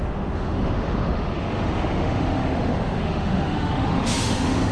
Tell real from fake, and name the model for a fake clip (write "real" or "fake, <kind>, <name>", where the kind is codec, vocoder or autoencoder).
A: fake, autoencoder, DAC-VAE